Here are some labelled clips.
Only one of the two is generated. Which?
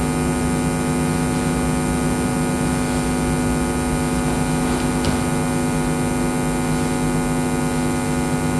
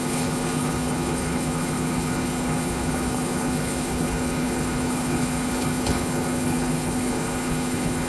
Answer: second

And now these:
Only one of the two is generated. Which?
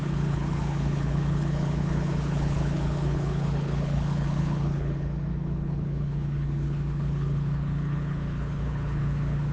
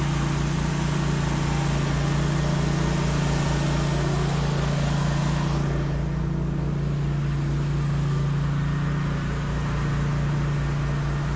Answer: first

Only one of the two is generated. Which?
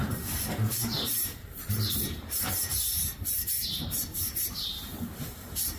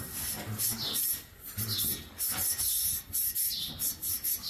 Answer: first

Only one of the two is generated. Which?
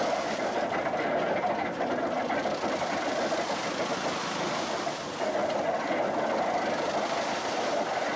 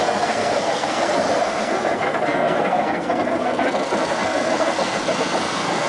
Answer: second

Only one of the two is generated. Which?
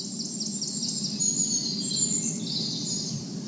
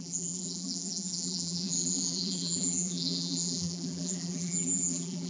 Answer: second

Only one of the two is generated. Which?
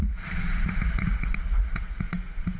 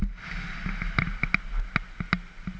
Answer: first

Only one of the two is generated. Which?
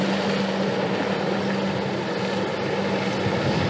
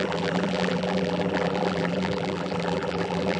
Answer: second